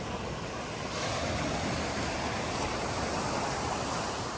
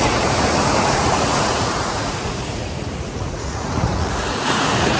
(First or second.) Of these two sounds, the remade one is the second